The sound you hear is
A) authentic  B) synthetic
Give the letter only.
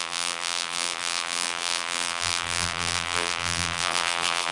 B